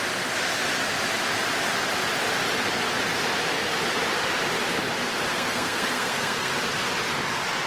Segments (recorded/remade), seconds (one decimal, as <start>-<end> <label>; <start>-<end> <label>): 0.0-5.3 recorded; 5.3-6.5 remade; 6.5-7.7 recorded